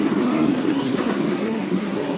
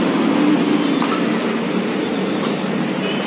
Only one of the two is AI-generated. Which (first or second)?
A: first